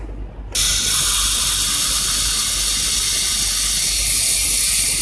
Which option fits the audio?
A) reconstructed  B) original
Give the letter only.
B